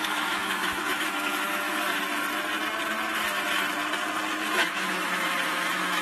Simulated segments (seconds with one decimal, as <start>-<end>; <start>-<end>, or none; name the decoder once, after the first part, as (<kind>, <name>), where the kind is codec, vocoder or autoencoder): 0.0-2.2 (autoencoder, DAC-VAE); 4.4-6.0